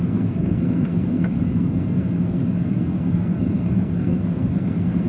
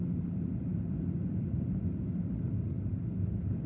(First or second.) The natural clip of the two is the second